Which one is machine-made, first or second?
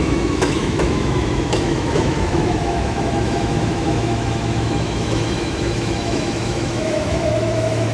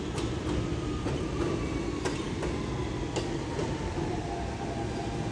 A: first